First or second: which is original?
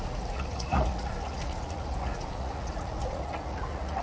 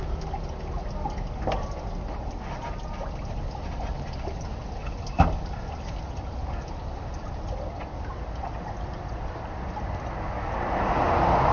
second